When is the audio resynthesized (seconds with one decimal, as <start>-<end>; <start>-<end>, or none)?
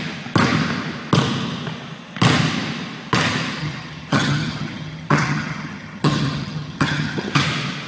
3.6-7.4